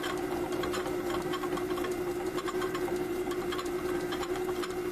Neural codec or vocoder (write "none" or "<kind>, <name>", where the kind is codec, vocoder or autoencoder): vocoder, BigVGAN v2